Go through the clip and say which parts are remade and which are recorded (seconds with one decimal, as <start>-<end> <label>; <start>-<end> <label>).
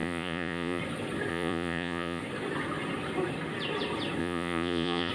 0.0-0.8 remade; 0.8-1.3 recorded; 1.3-2.2 remade; 2.2-4.2 recorded; 4.2-5.1 remade